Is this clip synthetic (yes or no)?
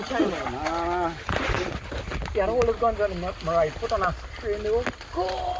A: no